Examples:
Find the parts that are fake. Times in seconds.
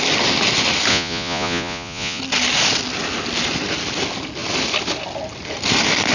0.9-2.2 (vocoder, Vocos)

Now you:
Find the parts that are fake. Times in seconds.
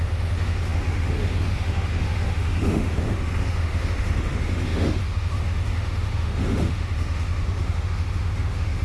0.0-8.8 (autoencoder, DAC-VAE)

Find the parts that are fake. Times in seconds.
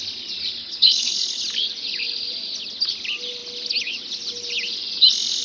0.6-1.4 (codec, HILCodec)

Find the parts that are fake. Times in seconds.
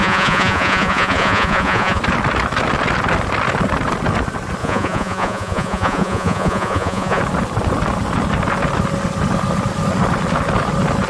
0.0-2.0 (vocoder, Vocos); 4.6-7.2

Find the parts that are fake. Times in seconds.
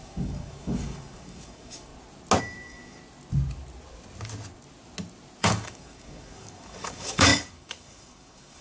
0.0-1.9 (codec, DAC); 2.4-3.0; 5.4-8.6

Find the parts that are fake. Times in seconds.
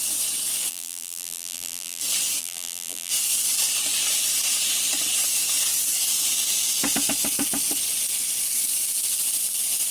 0.7-2.0 (vocoder, BigVGAN v2); 2.4-3.1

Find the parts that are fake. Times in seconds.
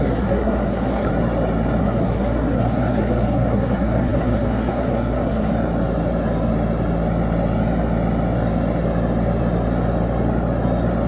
0.0-1.1 (codec, SNAC); 1.8-5.5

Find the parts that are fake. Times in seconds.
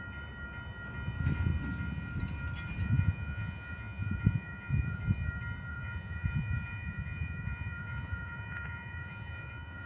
2.8-5.0 (vocoder, Vocos); 5.7-9.9